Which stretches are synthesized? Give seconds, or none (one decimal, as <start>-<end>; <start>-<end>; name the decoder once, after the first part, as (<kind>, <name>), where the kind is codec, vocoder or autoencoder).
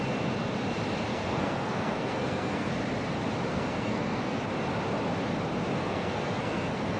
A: 1.1-2.7 (codec, SNAC); 3.5-4.4; 5.8-7.0